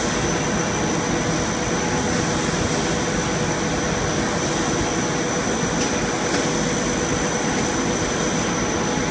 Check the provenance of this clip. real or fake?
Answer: real